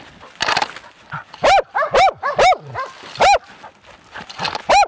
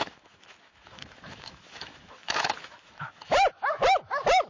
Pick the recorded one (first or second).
first